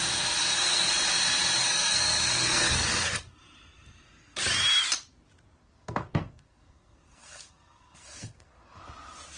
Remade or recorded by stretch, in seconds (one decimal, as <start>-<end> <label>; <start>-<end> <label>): 0.0-0.4 recorded; 0.4-0.9 remade; 0.9-1.6 recorded; 1.6-3.1 remade; 3.1-5.6 recorded; 5.6-8.8 remade; 8.8-9.4 recorded